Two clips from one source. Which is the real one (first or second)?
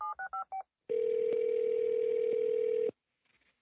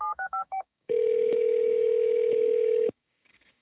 first